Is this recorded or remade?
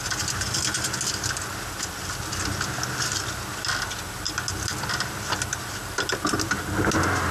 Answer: recorded